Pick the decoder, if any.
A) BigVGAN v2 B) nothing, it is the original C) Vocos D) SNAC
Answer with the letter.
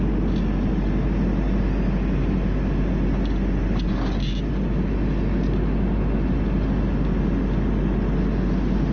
B